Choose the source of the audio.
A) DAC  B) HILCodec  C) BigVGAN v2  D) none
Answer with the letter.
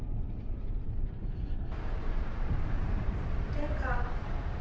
C